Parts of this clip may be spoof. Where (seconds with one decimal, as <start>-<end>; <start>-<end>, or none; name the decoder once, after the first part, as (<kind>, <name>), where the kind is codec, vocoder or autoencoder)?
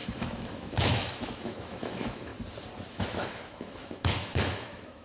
0.0-2.3 (autoencoder, DAC-VAE); 2.9-5.0